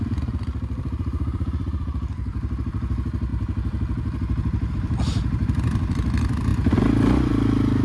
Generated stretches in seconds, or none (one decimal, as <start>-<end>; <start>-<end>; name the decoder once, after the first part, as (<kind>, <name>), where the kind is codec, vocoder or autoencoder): 0.0-6.5 (vocoder, BigVGAN v2); 7.3-7.8